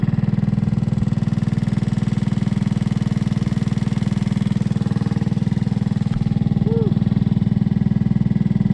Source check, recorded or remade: recorded